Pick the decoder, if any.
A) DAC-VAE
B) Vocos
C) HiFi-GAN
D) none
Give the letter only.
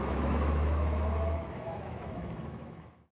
A